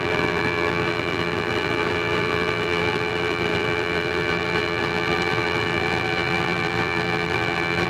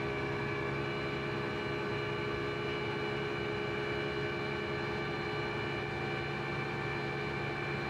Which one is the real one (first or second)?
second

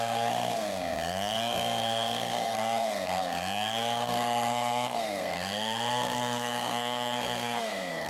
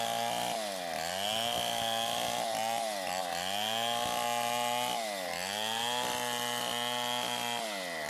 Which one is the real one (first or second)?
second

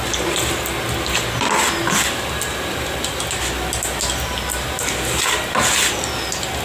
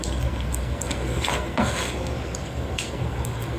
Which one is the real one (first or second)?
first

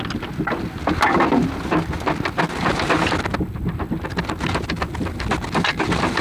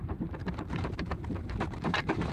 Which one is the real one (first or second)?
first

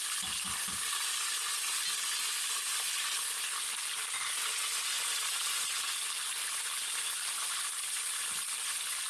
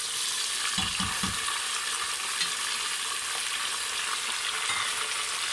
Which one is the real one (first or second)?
second